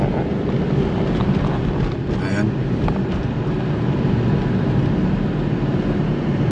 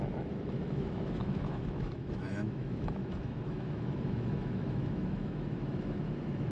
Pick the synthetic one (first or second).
second